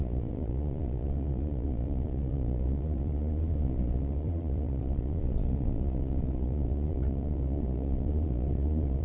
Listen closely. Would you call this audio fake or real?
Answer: fake